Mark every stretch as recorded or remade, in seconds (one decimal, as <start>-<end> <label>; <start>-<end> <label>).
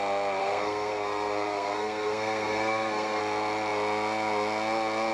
0.0-0.4 recorded; 0.4-3.2 remade; 3.2-5.1 recorded